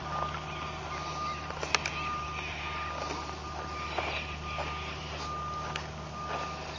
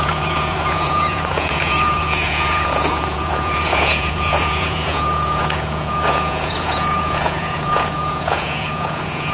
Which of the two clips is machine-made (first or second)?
second